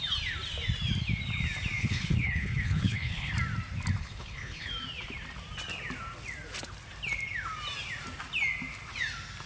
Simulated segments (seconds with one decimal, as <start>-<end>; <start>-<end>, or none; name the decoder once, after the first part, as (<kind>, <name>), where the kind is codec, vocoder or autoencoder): 1.8-3.3 (codec, HILCodec); 4.0-4.7